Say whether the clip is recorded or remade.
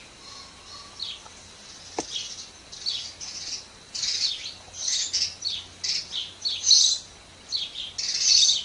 recorded